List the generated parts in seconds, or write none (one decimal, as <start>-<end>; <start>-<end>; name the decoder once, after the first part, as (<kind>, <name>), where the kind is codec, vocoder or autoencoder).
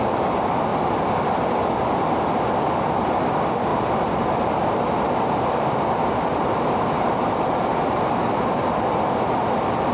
3.7-5.4 (vocoder, BigVGAN v2); 6.3-8.6